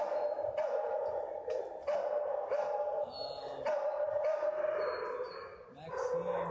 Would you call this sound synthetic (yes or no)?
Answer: no